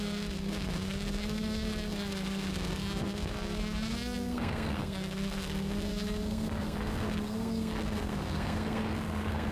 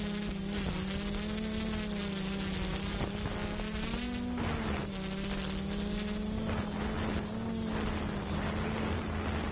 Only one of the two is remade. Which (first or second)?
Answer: first